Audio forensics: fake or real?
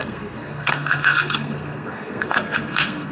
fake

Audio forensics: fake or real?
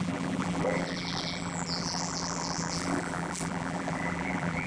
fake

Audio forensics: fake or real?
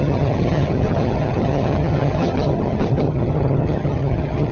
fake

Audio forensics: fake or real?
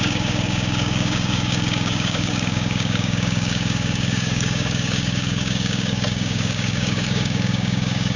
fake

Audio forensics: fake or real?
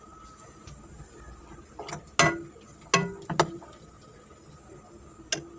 real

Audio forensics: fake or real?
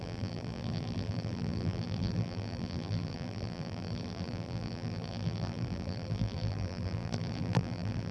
fake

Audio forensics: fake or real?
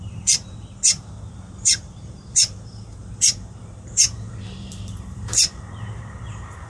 fake